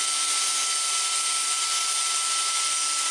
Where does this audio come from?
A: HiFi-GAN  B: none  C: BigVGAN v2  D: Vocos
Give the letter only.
B